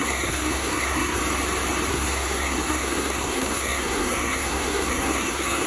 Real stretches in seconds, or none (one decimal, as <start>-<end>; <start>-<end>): 1.2-1.9

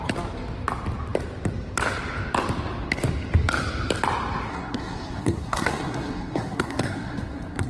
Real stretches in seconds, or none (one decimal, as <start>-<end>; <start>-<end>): 0.0-4.5